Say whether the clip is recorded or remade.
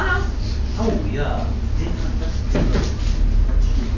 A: recorded